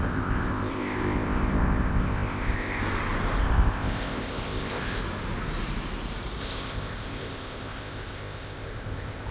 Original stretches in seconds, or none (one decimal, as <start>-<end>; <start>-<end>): 2.8-3.4; 5.0-6.4